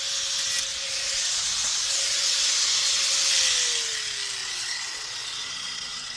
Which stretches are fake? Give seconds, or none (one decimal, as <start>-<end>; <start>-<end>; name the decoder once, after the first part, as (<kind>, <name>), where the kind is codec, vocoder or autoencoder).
0.7-3.3 (vocoder, Vocos); 4.4-6.2